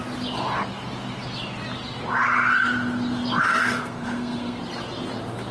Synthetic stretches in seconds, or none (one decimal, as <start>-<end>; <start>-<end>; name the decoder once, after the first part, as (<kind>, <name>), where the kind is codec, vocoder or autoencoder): 3.6-4.6 (codec, SNAC)